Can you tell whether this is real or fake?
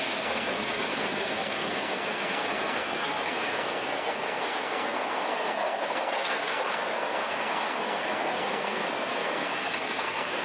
fake